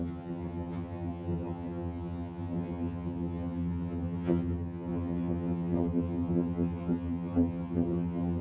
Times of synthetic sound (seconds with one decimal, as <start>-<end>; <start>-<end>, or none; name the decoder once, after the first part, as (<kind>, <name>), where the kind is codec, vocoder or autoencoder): 0.0-8.4 (vocoder, HiFi-GAN)